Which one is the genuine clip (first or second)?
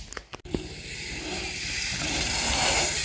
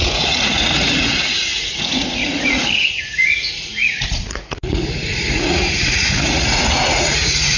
first